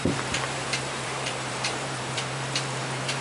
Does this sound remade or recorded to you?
remade